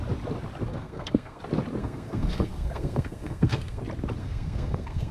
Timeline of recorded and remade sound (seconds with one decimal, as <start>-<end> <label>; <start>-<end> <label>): 0.0-0.7 recorded; 0.7-1.4 remade; 1.4-1.8 recorded; 1.8-3.8 remade; 3.8-4.2 recorded; 4.2-5.1 remade